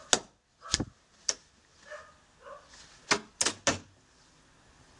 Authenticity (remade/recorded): recorded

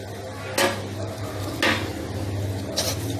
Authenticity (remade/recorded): recorded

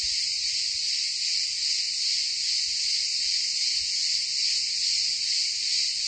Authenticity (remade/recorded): recorded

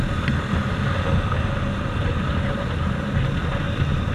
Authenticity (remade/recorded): recorded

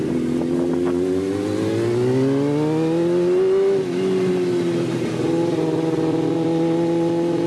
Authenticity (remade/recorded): recorded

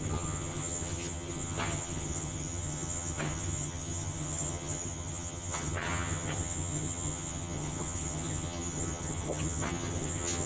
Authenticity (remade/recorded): remade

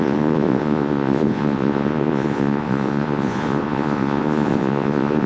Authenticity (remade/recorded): remade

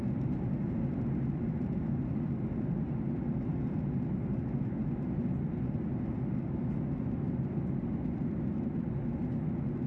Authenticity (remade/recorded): recorded